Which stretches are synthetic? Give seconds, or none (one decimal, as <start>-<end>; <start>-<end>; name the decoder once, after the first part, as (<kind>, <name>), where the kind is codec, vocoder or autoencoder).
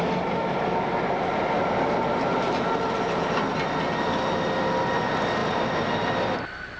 0.4-1.6 (vocoder, BigVGAN v2); 2.3-3.4